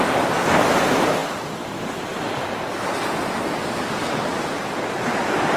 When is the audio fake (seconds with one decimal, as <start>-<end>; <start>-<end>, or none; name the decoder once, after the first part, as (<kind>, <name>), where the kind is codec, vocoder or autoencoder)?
none